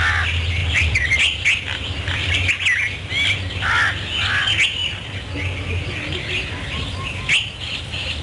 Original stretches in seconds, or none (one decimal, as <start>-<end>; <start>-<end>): 0.0-0.6; 2.5-8.2